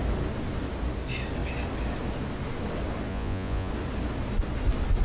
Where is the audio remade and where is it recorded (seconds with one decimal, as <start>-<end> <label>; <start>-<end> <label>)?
0.0-3.1 recorded; 3.1-3.7 remade; 3.7-5.0 recorded